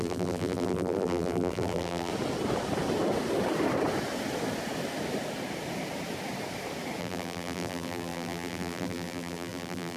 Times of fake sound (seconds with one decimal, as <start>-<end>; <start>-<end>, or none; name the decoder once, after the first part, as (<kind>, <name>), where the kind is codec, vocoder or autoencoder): 0.0-2.1 (vocoder, BigVGAN v2); 7.0-10.0